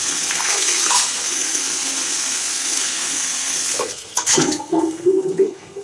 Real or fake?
fake